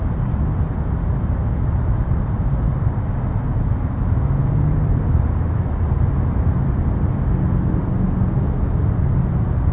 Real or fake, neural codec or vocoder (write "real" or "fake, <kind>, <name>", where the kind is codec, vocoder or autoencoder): real